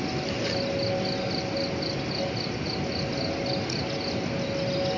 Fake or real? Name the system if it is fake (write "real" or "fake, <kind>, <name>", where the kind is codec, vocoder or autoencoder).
real